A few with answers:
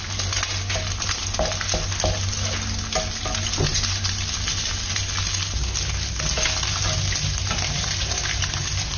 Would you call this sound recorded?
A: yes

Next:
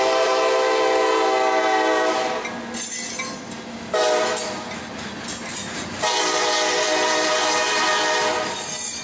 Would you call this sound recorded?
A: yes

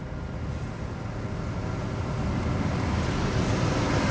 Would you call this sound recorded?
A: yes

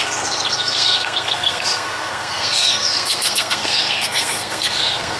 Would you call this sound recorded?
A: no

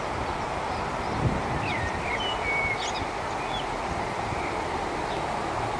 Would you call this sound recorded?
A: yes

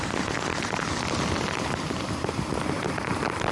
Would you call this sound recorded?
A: no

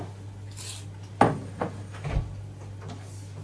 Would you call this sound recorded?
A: yes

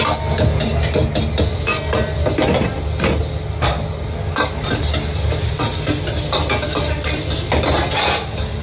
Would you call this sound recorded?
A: yes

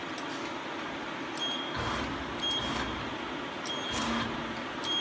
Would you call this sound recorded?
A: yes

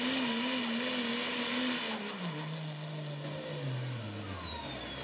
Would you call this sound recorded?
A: yes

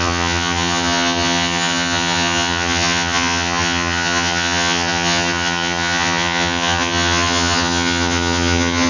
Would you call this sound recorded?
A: no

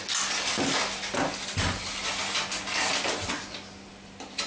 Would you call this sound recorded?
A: yes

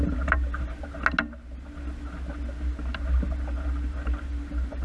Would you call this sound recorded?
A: yes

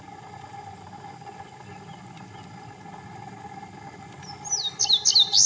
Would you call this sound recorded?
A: yes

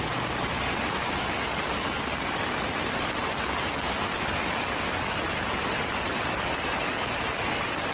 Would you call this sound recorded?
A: yes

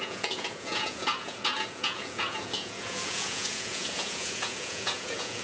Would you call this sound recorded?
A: no